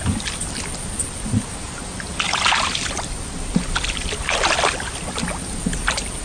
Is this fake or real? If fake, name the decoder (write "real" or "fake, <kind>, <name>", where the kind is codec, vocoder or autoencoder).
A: real